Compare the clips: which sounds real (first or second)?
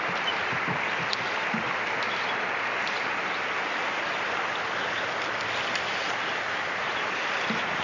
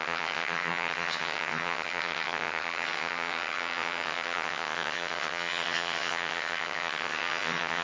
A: first